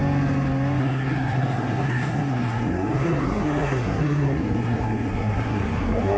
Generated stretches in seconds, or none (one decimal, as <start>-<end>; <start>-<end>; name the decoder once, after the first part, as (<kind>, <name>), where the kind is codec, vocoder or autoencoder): 0.8-6.2 (codec, SNAC)